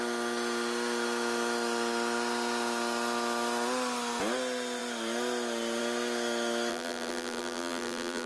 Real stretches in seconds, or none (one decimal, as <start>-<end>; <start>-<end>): 0.0-6.7